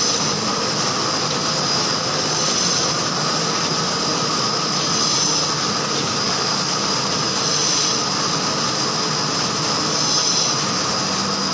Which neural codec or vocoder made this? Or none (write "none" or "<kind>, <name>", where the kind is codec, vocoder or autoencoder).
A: none